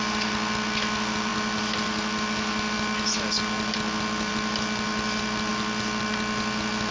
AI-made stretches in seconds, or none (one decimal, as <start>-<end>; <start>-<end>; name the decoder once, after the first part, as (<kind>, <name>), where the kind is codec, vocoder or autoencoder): none